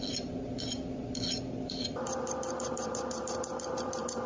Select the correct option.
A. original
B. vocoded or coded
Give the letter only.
B